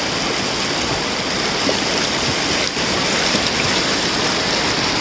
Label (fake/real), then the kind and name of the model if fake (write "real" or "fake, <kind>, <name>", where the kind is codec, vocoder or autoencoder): real